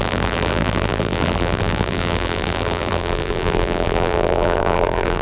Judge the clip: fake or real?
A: fake